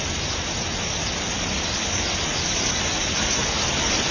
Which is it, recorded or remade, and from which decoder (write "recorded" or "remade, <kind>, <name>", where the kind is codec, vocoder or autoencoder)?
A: recorded